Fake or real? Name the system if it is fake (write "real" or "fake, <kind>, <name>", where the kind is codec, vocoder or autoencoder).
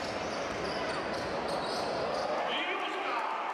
real